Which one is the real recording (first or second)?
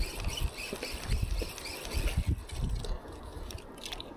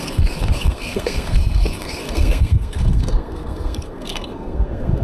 first